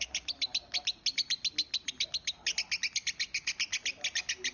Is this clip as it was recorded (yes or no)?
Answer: yes